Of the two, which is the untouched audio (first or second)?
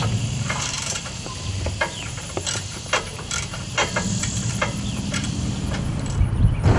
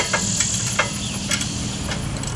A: second